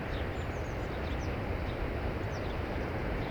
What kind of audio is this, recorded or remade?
remade